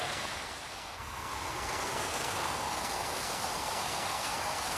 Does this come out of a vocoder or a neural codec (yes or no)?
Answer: yes